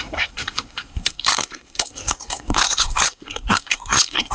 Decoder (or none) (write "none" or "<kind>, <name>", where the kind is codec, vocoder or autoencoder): codec, SNAC